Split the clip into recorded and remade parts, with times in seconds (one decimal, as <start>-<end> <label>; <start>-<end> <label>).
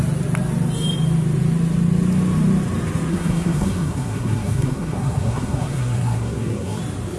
0.0-3.1 recorded; 3.1-6.8 remade; 6.8-7.2 recorded